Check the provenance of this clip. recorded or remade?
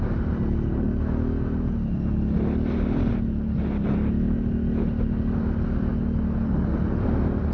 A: recorded